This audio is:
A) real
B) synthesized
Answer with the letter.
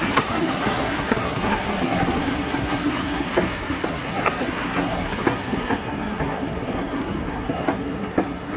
B